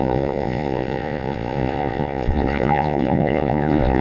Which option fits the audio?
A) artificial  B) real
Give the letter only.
A